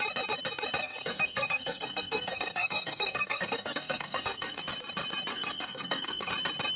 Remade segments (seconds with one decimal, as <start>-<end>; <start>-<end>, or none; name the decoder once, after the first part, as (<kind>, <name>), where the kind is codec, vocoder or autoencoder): 0.8-4.6 (codec, SNAC); 5.3-6.3